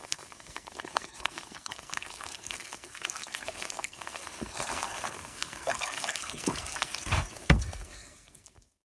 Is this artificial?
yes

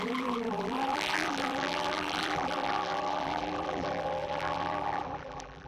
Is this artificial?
yes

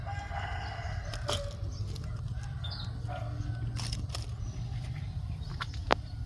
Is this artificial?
no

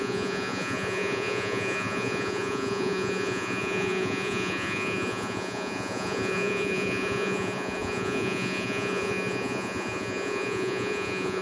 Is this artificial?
yes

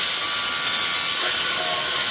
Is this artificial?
no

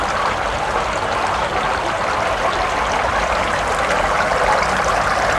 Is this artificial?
no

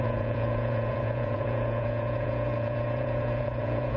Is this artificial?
yes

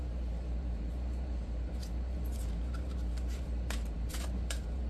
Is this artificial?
yes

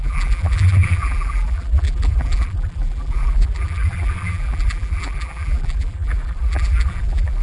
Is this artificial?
yes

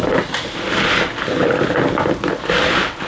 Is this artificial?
no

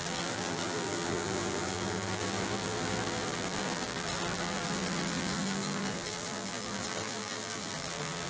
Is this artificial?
yes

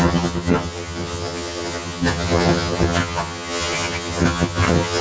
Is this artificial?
yes